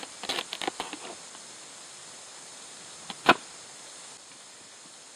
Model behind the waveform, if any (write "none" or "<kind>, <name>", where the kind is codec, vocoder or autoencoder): none